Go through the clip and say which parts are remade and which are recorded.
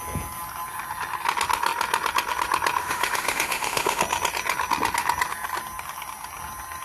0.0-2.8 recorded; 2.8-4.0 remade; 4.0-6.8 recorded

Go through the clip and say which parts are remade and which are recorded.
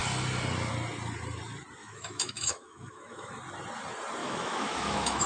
0.0-1.8 recorded; 1.8-3.3 remade; 3.3-4.2 recorded; 4.2-5.3 remade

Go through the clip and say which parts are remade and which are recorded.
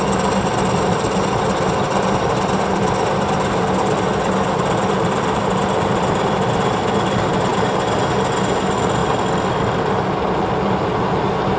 0.0-11.6 recorded